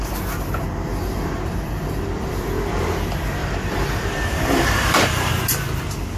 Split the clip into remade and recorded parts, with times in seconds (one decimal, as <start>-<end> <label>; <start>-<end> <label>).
0.0-0.9 recorded; 0.9-2.3 remade; 2.3-3.4 recorded; 3.4-5.3 remade; 5.3-6.2 recorded